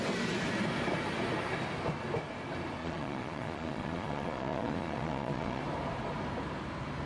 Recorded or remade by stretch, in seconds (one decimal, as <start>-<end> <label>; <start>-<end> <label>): 0.0-2.8 recorded; 2.8-5.6 remade; 5.6-7.1 recorded